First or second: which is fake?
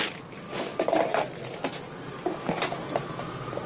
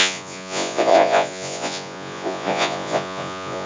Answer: second